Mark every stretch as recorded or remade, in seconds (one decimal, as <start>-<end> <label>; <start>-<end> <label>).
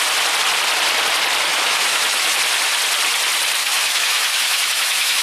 0.0-1.5 recorded; 1.5-2.4 remade; 2.4-3.6 recorded; 3.6-5.2 remade